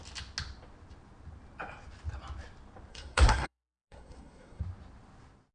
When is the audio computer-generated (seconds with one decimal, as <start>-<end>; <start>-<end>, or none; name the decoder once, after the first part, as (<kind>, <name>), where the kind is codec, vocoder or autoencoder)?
2.9-4.6 (codec, SNAC)